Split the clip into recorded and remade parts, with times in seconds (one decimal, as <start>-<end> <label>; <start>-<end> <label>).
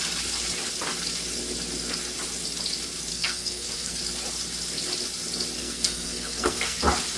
0.0-3.1 recorded; 3.1-4.0 remade; 4.0-5.6 recorded; 5.6-6.8 remade; 6.8-7.2 recorded